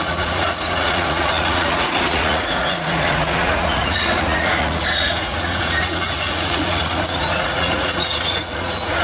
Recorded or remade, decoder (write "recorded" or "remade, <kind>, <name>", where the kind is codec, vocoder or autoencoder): remade, vocoder, Vocos